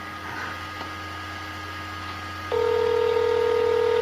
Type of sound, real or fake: real